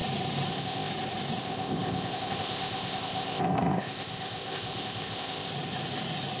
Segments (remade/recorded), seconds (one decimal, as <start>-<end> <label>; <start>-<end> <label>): 0.0-0.5 recorded; 0.5-0.9 remade; 0.9-1.4 recorded; 1.4-5.5 remade; 5.5-6.4 recorded